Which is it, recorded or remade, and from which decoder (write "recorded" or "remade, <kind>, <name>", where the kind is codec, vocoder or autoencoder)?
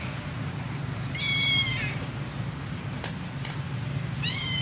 recorded